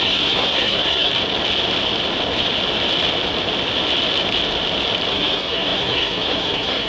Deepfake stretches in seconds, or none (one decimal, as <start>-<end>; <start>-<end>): 0.0-1.1; 5.1-6.9